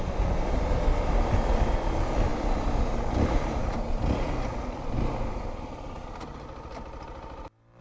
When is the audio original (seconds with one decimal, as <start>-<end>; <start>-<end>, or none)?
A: 0.0-7.8